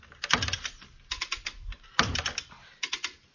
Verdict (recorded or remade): recorded